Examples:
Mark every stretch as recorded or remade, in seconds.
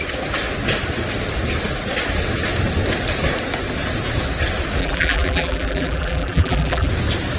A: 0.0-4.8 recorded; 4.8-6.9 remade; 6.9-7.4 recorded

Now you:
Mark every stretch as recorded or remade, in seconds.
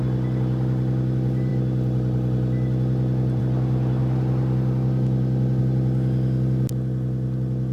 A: 0.0-7.7 recorded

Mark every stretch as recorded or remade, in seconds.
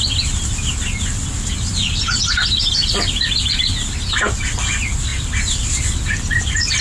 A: 0.0-5.1 recorded; 5.1-6.8 remade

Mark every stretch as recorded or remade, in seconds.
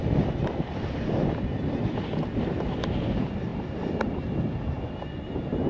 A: 0.0-2.6 remade; 2.6-3.5 recorded; 3.5-4.2 remade; 4.2-5.7 recorded